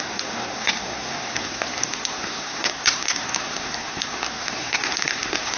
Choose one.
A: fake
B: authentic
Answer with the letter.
A